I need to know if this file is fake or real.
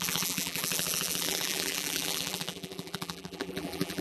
fake